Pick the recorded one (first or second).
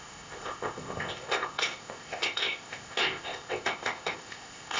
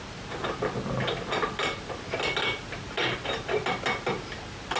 second